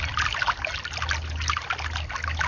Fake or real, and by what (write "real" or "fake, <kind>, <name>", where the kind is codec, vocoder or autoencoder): real